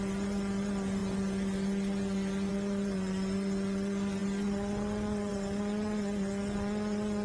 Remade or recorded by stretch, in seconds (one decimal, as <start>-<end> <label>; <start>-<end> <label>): 0.0-7.2 recorded